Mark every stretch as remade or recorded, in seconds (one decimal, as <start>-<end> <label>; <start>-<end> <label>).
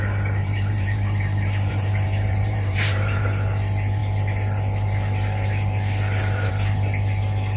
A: 0.0-0.4 recorded; 0.4-3.2 remade; 3.2-7.6 recorded